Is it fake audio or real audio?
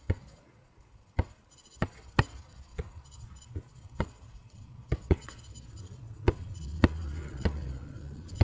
fake